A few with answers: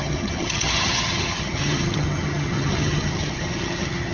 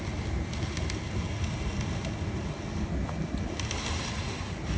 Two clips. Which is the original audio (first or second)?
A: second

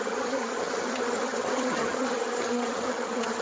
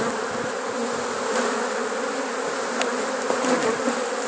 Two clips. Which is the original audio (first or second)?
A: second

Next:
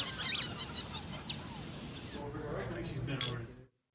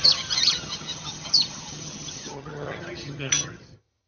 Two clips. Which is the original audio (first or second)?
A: first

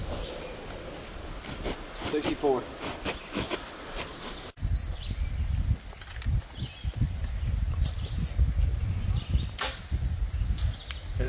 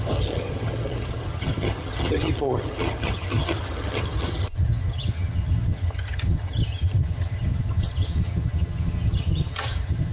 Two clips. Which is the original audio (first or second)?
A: first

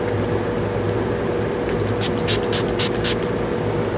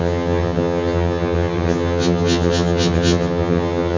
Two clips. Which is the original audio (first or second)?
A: first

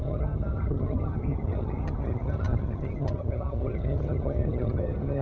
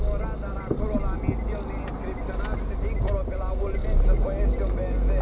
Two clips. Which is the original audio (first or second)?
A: second